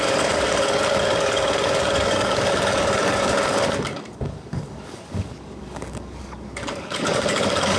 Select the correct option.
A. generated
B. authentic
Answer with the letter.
A